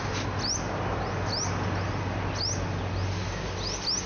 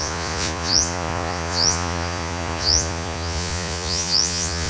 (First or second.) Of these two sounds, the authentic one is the first